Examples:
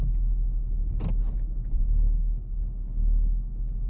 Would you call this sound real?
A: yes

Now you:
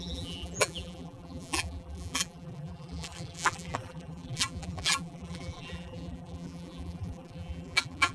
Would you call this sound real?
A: no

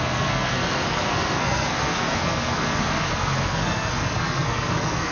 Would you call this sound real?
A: no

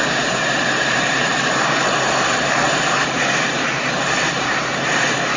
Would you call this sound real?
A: no